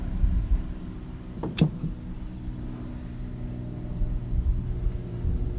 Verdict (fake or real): real